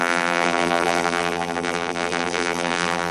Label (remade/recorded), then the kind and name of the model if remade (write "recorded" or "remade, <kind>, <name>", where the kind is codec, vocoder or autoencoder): remade, vocoder, BigVGAN v2